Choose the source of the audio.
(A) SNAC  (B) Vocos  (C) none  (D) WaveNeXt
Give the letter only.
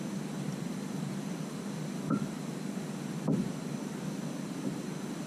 C